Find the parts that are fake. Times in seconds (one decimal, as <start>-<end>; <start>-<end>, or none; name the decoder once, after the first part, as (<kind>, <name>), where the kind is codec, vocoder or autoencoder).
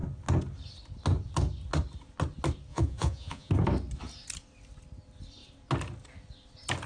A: 2.7-3.5 (vocoder, Vocos)